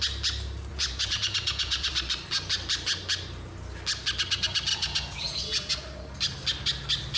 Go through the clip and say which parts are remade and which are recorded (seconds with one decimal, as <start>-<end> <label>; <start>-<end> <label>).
0.0-0.7 recorded; 0.7-1.9 remade; 1.9-4.7 recorded; 4.7-5.7 remade; 5.7-7.2 recorded